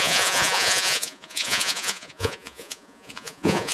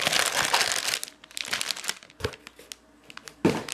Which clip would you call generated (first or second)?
first